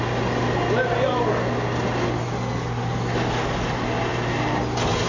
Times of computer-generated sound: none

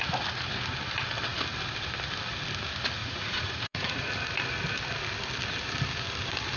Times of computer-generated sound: 3.0-4.1 (vocoder, Vocos)